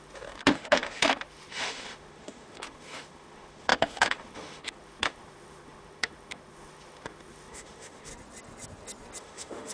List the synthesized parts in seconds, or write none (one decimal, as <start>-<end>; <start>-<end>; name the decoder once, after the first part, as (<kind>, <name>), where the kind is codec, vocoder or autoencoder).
0.0-8.1 (autoencoder, DAC-VAE); 9.2-9.7